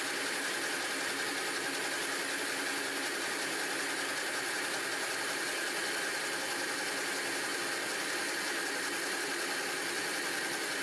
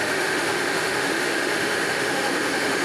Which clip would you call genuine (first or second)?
first